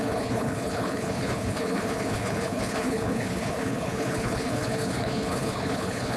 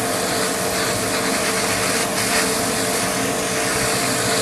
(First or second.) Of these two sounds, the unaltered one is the second